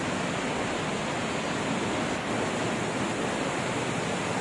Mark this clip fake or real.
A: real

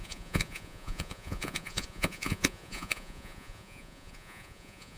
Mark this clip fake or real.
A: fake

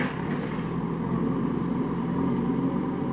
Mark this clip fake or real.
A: real